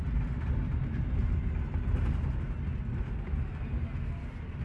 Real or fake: real